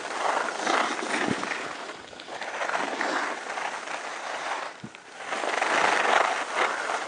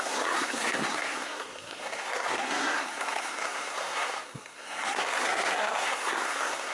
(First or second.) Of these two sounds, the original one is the first